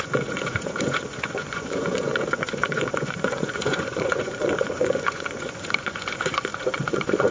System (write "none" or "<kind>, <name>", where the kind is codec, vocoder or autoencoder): vocoder, Vocos